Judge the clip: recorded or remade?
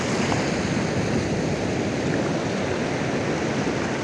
recorded